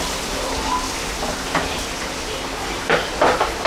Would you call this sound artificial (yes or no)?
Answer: no